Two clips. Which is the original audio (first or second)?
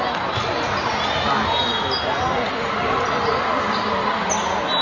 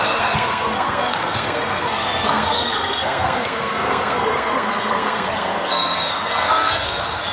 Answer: first